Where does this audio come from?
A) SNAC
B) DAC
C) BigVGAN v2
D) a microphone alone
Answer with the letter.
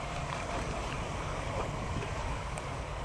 B